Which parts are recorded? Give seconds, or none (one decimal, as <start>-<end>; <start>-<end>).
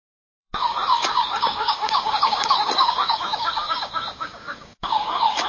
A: none